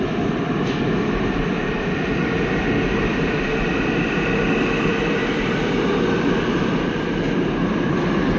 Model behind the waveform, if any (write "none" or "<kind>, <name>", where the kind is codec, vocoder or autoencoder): none